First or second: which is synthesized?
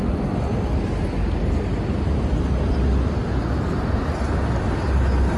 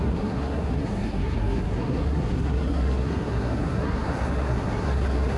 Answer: second